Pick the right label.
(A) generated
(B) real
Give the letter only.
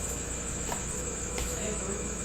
A